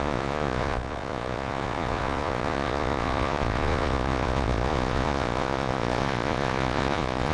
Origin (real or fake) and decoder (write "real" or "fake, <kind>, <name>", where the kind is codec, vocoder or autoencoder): fake, vocoder, Vocos